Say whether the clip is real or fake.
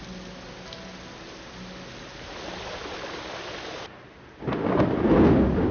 real